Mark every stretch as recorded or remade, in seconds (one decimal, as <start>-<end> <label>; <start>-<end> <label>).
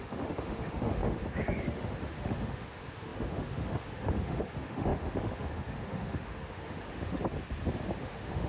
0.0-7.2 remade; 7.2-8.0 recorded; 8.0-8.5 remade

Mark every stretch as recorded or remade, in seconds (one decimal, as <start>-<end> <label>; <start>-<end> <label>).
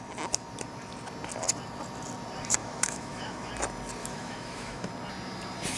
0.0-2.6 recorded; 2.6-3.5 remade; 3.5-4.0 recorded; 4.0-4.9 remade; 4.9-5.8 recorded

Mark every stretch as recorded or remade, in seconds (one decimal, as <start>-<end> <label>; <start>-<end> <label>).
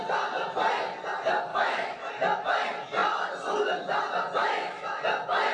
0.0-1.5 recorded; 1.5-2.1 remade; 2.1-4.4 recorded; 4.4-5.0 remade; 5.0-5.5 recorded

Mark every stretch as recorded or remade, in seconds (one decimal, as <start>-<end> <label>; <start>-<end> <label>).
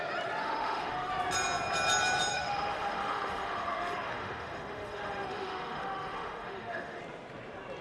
0.0-0.4 recorded; 0.4-1.1 remade; 1.1-2.3 recorded; 2.3-7.0 remade; 7.0-7.8 recorded